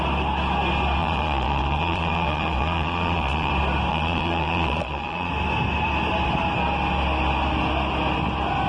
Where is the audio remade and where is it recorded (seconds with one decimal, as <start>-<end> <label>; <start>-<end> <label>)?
0.0-1.0 recorded; 1.0-3.5 remade; 3.5-3.9 recorded; 3.9-5.3 remade; 5.3-8.7 recorded